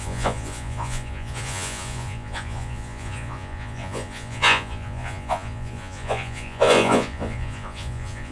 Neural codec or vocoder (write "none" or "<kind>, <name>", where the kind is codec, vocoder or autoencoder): vocoder, Vocos